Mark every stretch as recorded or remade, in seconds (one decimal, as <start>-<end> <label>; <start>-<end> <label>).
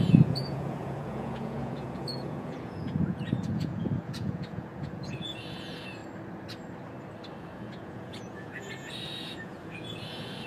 0.0-6.0 remade; 6.0-7.4 recorded; 7.4-10.5 remade